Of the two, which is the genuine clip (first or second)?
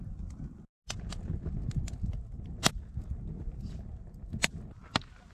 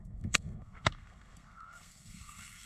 first